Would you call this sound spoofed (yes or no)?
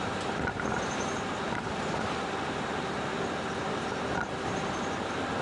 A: yes